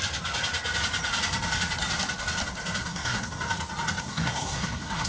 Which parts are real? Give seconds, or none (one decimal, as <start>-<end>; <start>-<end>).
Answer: 0.0-2.8; 3.3-4.0